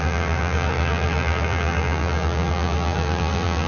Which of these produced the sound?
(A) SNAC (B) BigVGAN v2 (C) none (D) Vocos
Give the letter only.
B